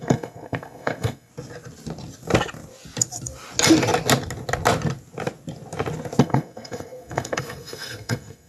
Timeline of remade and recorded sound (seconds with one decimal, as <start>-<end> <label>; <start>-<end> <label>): 0.0-1.3 remade; 1.3-6.2 recorded; 6.2-8.5 remade

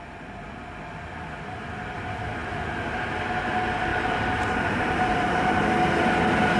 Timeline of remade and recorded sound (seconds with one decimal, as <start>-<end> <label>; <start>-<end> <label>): 0.0-3.9 recorded; 3.9-5.6 remade; 5.6-6.6 recorded

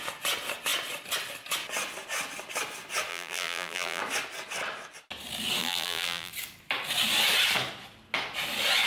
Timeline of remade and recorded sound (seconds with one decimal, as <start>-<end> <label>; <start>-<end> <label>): 0.0-3.1 recorded; 3.1-4.0 remade; 4.0-5.6 recorded; 5.6-6.3 remade; 6.3-8.9 recorded

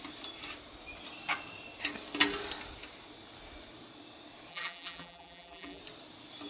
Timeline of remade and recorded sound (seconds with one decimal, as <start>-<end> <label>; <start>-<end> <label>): 0.0-4.5 recorded; 4.5-5.8 remade; 5.8-6.5 recorded

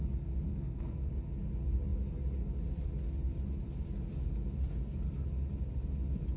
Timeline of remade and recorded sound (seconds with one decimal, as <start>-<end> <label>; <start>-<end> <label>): 0.0-0.5 recorded; 0.5-1.1 remade; 1.1-6.4 recorded

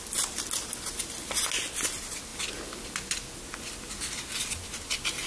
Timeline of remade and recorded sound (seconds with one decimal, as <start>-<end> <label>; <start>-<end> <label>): 0.0-5.3 recorded

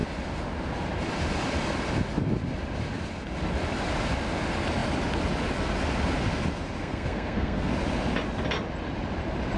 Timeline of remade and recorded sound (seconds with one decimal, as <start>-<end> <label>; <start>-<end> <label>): 0.0-6.8 recorded; 6.8-7.7 remade; 7.7-9.6 recorded

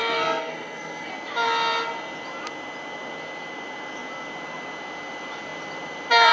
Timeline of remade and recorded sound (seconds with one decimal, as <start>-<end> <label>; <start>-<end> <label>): 0.0-1.1 remade; 1.1-6.3 recorded